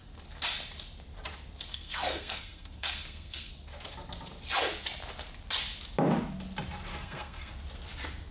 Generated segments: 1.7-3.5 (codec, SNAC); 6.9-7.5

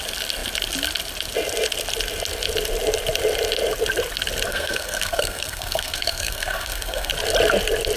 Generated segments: 4.5-7.1 (codec, SNAC)

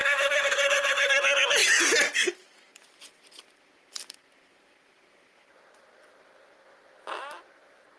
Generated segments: 0.0-1.1 (codec, SNAC)

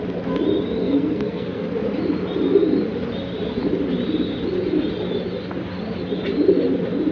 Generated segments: 0.8-1.7 (codec, SNAC)

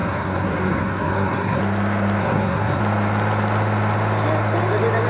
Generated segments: 0.0-1.6 (codec, SNAC); 2.2-2.8

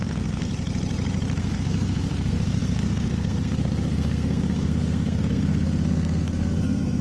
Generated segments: 0.0-0.5 (codec, SNAC); 1.4-7.0

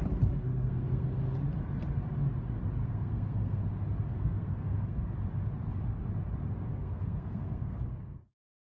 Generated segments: 0.5-1.2 (codec, SNAC); 2.8-3.6; 4.1-5.0; 6.7-8.2